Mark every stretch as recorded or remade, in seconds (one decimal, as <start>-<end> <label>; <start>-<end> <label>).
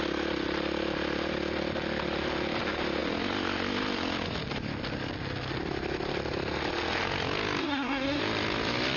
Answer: 0.0-7.6 recorded; 7.6-8.2 remade; 8.2-9.0 recorded